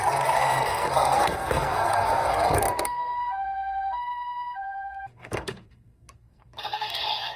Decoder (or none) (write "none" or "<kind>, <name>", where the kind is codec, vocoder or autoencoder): codec, SNAC